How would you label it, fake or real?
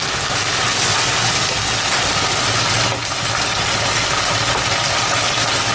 real